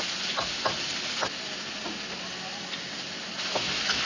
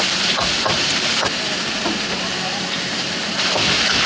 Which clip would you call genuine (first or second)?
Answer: first